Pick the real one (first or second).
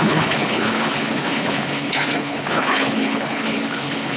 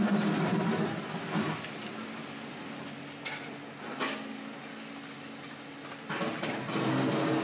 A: second